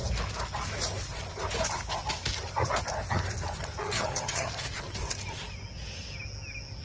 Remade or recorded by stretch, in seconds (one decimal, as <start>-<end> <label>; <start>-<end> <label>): 0.0-3.8 recorded; 3.8-4.5 remade; 4.5-6.8 recorded